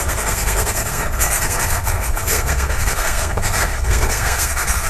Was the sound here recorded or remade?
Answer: remade